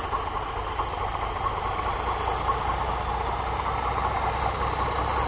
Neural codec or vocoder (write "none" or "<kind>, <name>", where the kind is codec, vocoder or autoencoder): none